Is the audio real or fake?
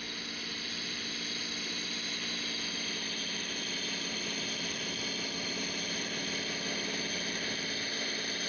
real